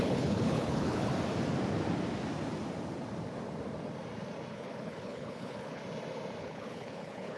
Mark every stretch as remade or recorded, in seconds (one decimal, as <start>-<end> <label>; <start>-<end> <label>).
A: 0.0-1.1 remade; 1.1-4.5 recorded; 4.5-5.8 remade; 5.8-6.4 recorded; 6.4-7.4 remade